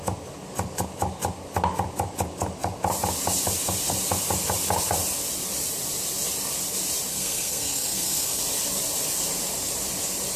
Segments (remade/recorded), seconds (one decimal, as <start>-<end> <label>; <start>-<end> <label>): 0.0-7.1 recorded; 7.1-8.4 remade; 8.4-10.4 recorded